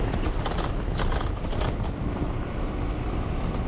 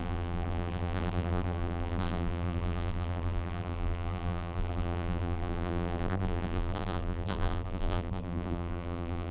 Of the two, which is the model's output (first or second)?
second